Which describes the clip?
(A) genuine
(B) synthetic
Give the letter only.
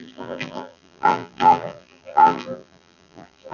B